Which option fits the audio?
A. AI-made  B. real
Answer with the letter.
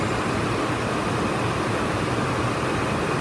B